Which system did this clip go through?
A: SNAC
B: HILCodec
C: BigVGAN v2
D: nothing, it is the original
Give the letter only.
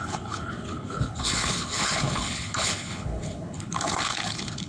B